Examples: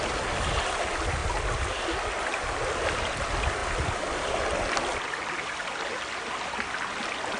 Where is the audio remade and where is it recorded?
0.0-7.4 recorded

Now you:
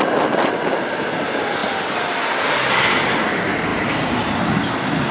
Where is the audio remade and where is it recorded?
0.0-5.1 recorded

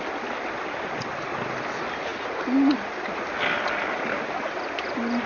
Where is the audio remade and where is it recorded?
0.0-5.3 recorded